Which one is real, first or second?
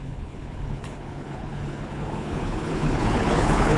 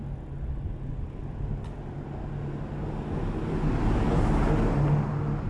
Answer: second